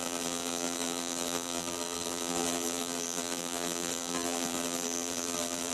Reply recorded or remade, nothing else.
remade